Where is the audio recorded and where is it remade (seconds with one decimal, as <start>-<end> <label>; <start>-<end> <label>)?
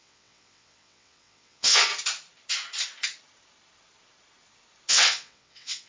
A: 0.0-1.9 remade; 1.9-4.9 recorded; 4.9-5.9 remade